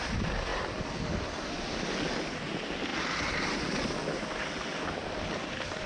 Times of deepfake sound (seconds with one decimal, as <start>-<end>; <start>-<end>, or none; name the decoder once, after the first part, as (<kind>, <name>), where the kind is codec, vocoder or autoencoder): none